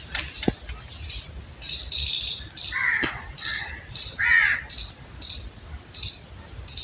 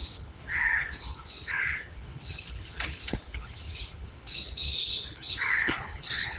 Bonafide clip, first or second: first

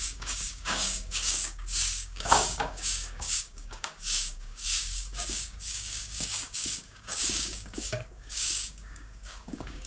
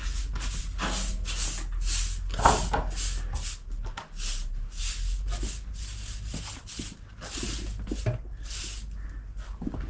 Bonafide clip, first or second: second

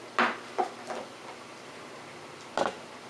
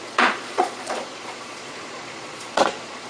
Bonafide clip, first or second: first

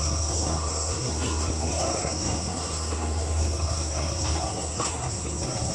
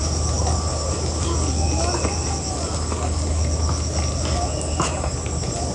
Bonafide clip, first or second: second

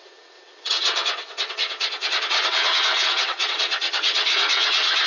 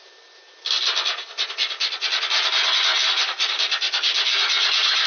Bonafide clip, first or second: second